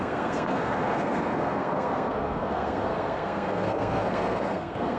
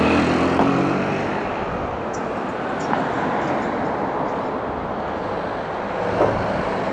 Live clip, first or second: second